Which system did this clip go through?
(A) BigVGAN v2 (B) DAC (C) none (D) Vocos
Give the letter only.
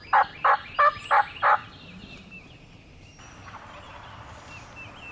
C